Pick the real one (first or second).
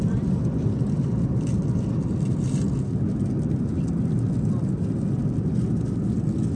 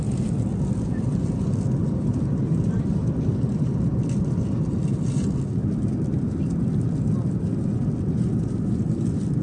first